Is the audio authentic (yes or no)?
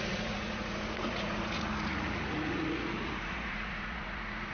no